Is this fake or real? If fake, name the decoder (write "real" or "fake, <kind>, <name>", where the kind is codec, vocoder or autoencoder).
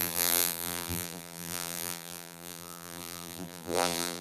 fake, vocoder, BigVGAN v2